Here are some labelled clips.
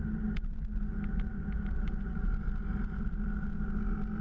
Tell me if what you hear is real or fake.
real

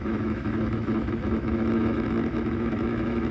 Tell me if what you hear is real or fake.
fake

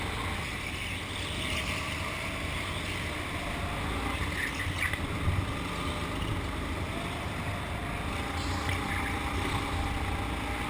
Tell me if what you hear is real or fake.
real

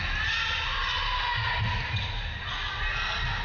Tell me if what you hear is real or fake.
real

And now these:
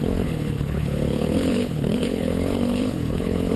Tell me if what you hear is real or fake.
fake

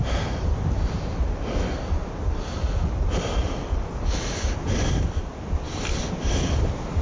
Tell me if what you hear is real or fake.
real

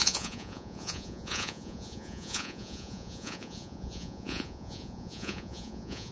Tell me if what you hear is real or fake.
fake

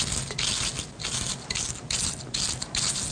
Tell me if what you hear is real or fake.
real